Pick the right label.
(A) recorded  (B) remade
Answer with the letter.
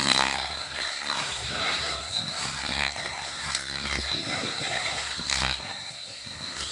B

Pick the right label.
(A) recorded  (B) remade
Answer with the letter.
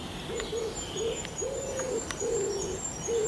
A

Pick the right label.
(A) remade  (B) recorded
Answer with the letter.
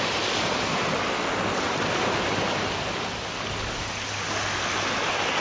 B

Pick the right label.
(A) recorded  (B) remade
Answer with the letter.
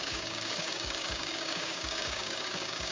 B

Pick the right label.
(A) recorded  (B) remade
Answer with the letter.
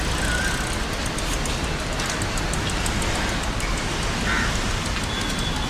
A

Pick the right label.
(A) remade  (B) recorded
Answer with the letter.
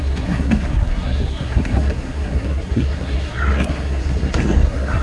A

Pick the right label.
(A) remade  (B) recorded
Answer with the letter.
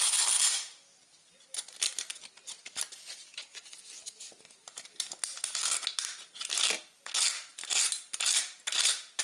B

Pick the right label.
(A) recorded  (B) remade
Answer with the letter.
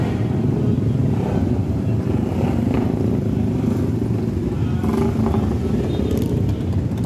A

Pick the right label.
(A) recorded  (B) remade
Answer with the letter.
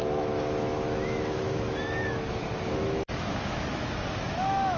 B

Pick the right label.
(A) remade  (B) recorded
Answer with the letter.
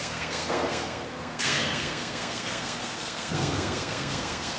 A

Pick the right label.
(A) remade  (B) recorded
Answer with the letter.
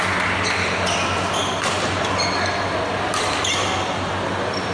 B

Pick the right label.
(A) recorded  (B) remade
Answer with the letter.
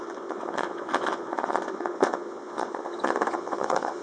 B